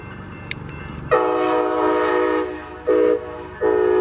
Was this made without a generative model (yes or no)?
yes